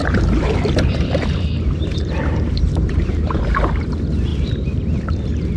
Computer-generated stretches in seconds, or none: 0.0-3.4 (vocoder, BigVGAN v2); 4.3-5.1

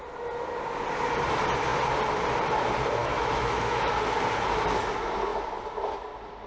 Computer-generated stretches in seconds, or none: 3.0-3.9 (autoencoder, DAC-VAE)

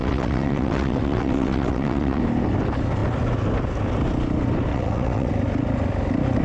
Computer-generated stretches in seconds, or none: 0.0-2.2 (vocoder, WaveNeXt); 4.7-5.3

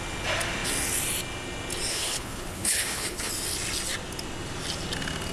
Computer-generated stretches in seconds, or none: 1.9-3.3 (codec, HILCodec)

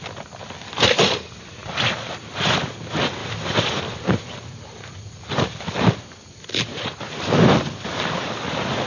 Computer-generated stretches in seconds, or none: 3.2-8.4 (vocoder, BigVGAN v2)

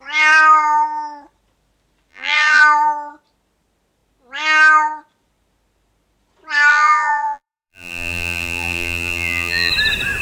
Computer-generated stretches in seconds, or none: 2.1-2.6 (vocoder, BigVGAN v2); 6.7-9.7